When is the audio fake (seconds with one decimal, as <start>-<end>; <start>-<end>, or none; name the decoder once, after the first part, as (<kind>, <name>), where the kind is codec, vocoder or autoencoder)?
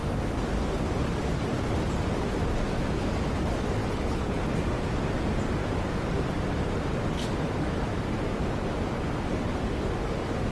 3.8-4.4 (codec, HILCodec)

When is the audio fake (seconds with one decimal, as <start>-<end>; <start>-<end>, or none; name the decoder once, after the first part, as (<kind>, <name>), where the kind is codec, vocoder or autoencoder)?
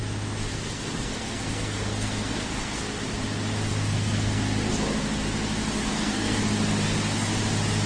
0.5-2.8 (codec, SNAC); 3.7-4.4; 5.8-6.4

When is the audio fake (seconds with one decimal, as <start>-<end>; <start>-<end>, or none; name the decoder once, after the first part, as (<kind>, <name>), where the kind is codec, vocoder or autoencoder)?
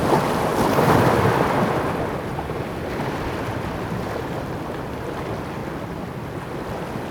0.5-3.7 (vocoder, BigVGAN v2); 5.6-6.3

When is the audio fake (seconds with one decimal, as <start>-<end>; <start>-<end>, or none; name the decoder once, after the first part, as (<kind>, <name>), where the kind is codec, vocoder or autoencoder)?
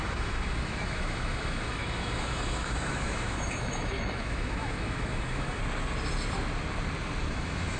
0.0-5.6 (autoencoder, DAC-VAE); 7.3-7.8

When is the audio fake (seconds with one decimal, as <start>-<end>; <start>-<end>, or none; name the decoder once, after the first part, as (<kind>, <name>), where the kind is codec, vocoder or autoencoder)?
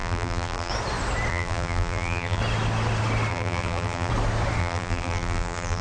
0.0-0.7 (vocoder, BigVGAN v2); 1.3-2.4; 3.3-4.1; 4.6-5.8